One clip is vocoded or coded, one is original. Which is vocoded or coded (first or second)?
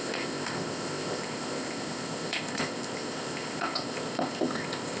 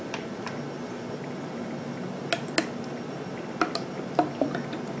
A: first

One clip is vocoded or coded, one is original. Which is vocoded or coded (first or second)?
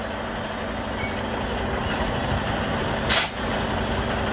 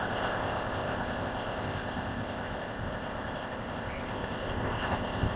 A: second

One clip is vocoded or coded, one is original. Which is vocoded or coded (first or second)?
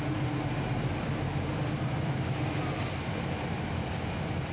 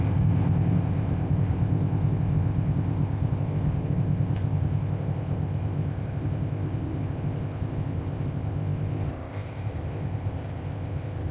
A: second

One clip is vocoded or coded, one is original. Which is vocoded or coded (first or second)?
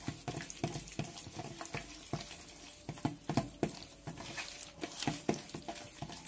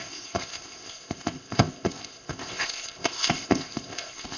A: second